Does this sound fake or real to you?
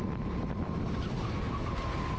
real